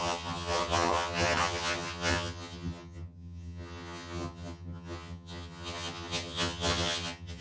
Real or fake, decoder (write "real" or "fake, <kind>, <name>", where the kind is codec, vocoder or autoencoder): fake, vocoder, HiFi-GAN